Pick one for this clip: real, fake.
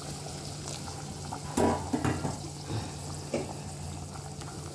real